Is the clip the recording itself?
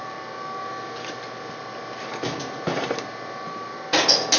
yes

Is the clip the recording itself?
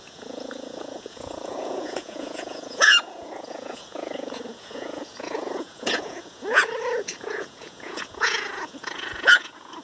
no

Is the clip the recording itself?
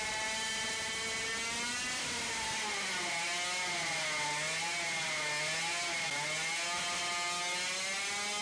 yes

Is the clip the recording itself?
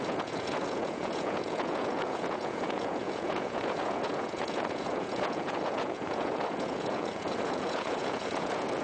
no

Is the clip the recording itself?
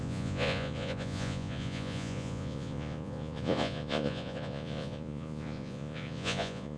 no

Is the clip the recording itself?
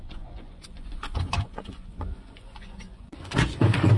no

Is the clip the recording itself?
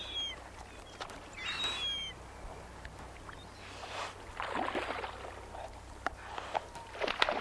yes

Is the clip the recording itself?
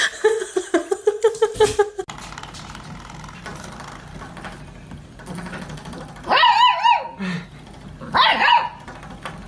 yes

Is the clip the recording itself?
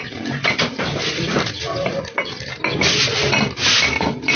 yes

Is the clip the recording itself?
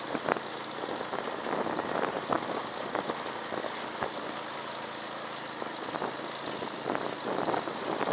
yes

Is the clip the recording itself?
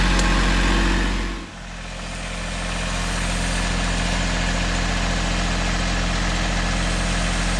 yes